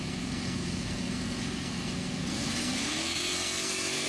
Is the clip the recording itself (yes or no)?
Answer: no